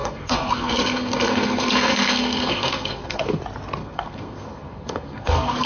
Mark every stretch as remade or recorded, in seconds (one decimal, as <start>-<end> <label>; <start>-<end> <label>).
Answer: 0.0-3.4 remade; 3.4-3.8 recorded; 3.8-5.7 remade